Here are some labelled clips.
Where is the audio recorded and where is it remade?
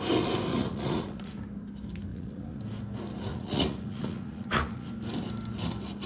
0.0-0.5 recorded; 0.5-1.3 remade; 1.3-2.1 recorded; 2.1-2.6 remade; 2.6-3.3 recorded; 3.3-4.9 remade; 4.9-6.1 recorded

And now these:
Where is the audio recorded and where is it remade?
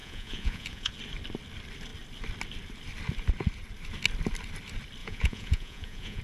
0.0-0.9 remade; 0.9-5.0 recorded; 5.0-6.2 remade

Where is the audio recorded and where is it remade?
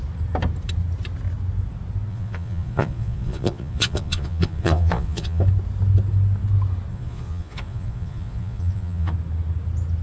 0.0-2.1 recorded; 2.1-5.4 remade; 5.4-6.9 recorded; 6.9-9.1 remade; 9.1-10.0 recorded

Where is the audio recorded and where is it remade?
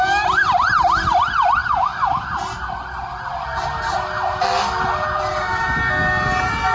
0.0-6.7 recorded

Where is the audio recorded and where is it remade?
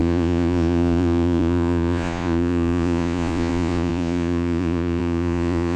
0.0-5.8 remade